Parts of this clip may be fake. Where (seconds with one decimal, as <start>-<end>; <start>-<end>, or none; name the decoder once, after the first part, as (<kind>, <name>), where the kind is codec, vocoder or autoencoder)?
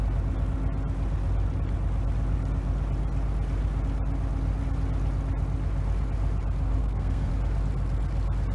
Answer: 6.8-7.3 (codec, SNAC)